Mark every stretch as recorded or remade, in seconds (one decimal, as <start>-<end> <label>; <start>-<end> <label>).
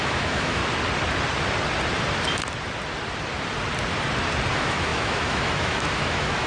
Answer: 0.0-0.6 remade; 0.6-4.5 recorded; 4.5-6.5 remade